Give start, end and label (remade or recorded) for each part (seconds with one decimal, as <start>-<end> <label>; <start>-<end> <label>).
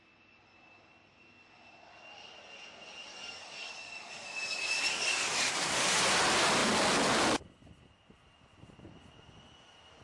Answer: 0.0-3.1 recorded; 3.1-5.9 remade; 5.9-10.0 recorded